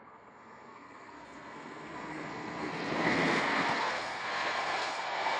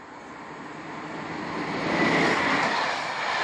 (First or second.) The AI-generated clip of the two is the first